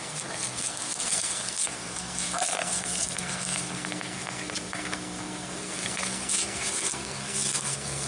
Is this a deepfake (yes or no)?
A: yes